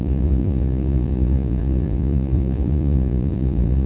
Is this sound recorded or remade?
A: remade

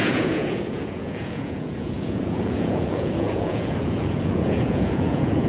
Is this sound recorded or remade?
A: remade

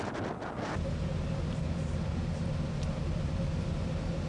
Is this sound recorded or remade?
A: recorded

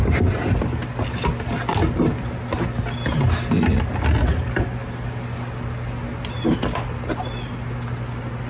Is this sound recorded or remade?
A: recorded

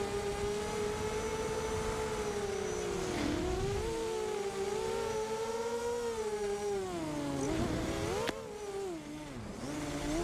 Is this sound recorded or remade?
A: recorded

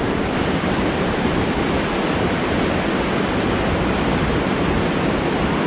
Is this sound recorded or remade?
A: recorded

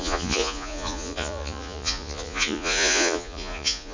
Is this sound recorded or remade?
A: remade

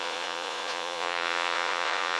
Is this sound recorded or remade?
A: remade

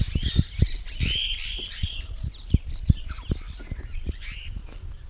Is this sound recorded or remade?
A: recorded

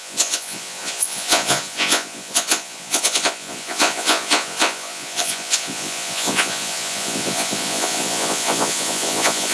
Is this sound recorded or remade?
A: remade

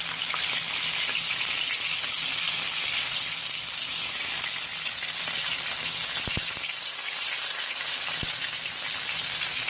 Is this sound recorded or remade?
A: recorded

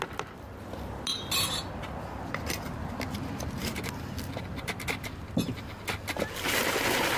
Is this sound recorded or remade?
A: recorded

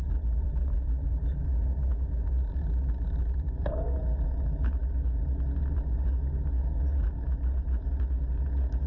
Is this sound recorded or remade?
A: recorded